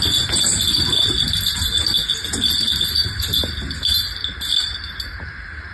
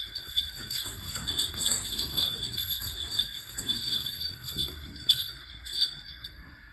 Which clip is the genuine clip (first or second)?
first